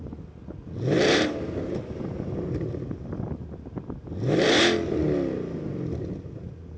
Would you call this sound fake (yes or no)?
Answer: no